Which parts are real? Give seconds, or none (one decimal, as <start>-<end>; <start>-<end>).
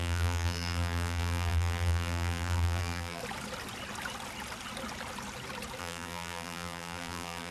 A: 3.2-5.8